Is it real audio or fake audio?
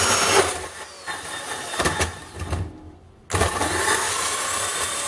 real